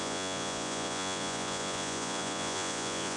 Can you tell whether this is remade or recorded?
remade